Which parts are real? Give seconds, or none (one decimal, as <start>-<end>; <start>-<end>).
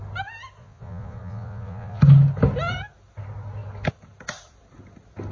0.0-0.6; 2.0-5.3